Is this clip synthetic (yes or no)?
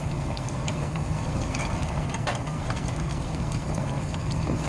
yes